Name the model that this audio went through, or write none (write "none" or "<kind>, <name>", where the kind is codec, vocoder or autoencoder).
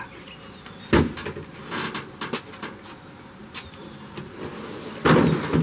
none